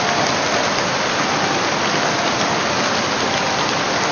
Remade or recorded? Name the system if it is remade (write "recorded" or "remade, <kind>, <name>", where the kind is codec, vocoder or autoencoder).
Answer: remade, vocoder, BigVGAN v2